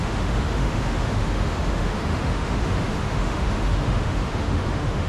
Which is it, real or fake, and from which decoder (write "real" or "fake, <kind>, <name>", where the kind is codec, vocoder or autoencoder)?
fake, autoencoder, DAC-VAE